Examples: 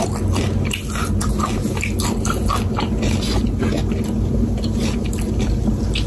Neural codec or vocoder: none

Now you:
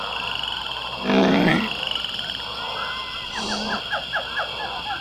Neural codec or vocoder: none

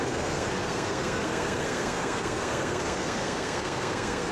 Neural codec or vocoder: codec, SNAC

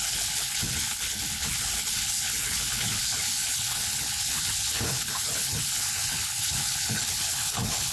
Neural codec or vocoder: codec, HILCodec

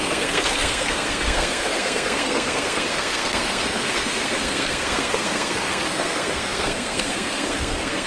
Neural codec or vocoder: codec, SNAC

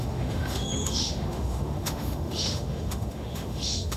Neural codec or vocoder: autoencoder, DAC-VAE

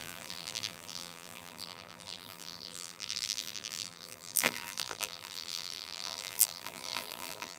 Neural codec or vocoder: vocoder, BigVGAN v2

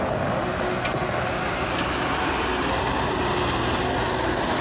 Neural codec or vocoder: none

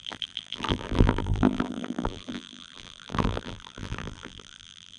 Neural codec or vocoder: vocoder, BigVGAN v2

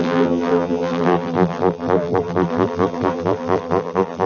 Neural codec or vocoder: vocoder, BigVGAN v2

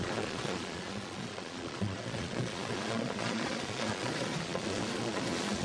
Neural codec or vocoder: vocoder, Vocos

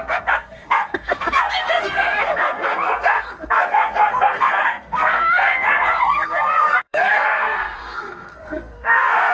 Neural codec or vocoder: codec, SNAC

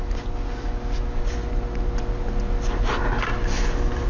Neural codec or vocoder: none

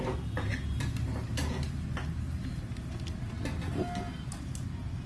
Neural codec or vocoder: none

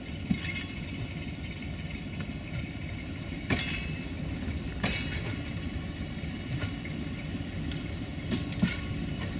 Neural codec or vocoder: none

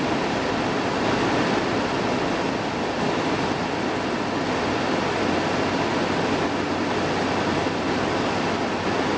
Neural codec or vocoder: none